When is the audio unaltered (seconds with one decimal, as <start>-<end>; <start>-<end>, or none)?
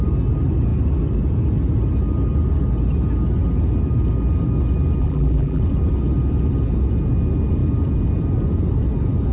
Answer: 0.0-5.0; 5.6-9.3